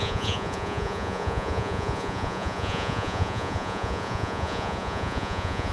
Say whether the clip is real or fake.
fake